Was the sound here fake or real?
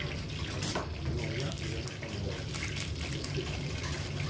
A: real